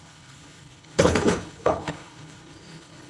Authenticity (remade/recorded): remade